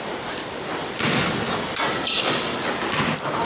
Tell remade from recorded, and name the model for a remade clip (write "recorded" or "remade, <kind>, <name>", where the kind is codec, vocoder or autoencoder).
recorded